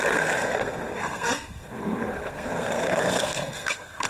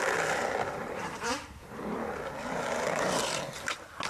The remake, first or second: first